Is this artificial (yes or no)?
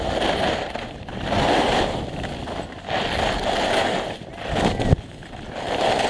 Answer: no